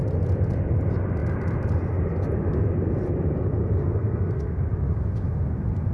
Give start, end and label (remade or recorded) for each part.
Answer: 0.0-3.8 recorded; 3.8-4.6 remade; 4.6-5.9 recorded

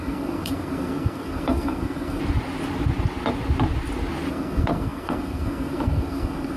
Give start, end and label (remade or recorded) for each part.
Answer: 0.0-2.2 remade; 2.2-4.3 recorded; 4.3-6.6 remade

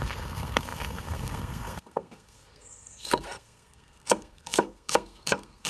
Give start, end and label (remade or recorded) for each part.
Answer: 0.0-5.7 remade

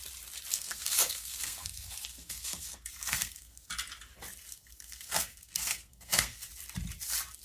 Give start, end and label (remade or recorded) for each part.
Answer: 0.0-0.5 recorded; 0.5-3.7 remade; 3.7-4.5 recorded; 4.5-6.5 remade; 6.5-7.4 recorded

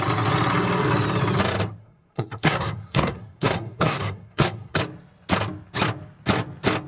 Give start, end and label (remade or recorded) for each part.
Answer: 0.0-1.8 recorded; 1.8-4.8 remade; 4.8-6.9 recorded

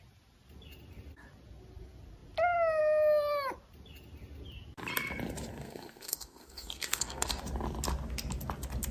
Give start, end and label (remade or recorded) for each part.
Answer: 0.0-5.5 recorded; 5.5-7.4 remade; 7.4-8.9 recorded

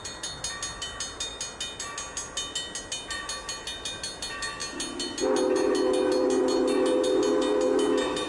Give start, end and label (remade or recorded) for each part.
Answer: 0.0-8.3 recorded